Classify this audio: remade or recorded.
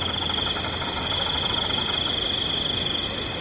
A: recorded